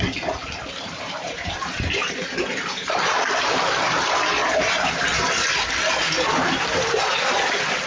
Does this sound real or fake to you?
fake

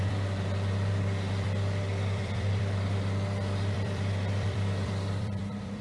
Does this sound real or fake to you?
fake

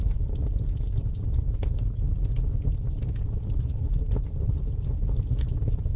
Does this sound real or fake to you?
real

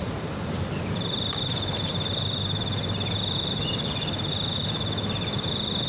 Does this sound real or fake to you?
fake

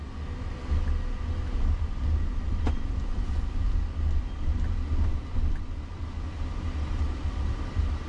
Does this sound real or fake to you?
real